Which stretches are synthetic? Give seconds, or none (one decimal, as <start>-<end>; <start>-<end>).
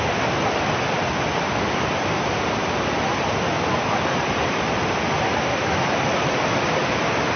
none